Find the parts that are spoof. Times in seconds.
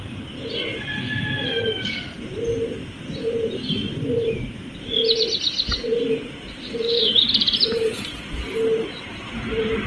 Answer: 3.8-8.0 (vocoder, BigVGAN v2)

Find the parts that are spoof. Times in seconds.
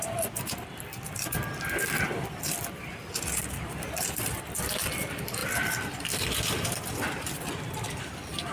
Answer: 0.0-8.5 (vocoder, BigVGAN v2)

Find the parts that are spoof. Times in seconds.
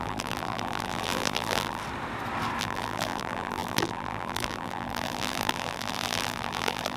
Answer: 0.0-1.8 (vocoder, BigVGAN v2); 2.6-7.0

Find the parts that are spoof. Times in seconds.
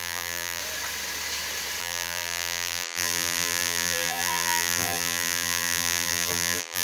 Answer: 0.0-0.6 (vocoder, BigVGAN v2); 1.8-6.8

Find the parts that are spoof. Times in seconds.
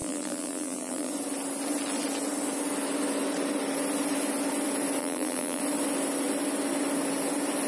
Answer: 0.0-1.1 (vocoder, BigVGAN v2); 5.0-5.6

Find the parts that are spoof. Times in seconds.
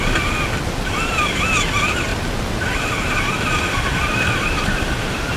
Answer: 2.1-5.4 (vocoder, BigVGAN v2)